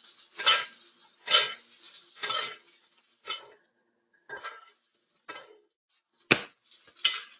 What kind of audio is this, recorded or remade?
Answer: recorded